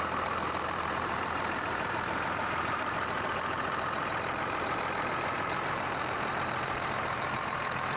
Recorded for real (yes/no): no